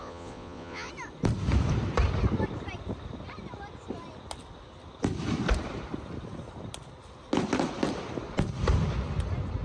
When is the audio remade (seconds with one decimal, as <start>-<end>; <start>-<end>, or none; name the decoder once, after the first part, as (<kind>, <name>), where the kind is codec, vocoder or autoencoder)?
0.0-0.9 (vocoder, Vocos)